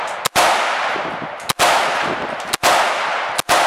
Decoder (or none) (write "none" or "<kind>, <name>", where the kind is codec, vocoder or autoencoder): none